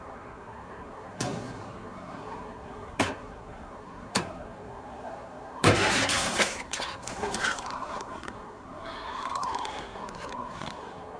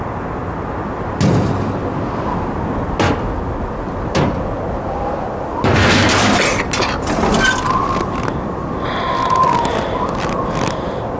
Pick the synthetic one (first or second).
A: first